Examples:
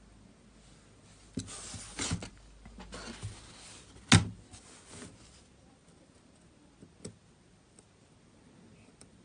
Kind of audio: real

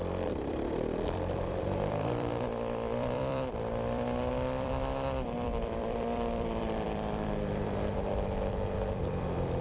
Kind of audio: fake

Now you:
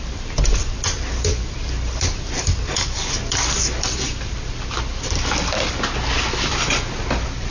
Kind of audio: real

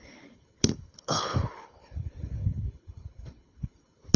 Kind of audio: fake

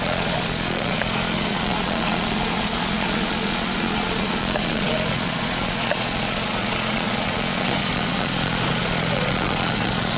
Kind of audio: fake